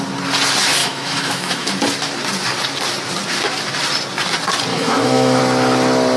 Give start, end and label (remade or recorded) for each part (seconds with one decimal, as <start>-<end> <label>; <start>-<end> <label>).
0.0-0.8 recorded; 0.8-1.7 remade; 1.7-4.7 recorded; 4.7-5.4 remade; 5.4-6.2 recorded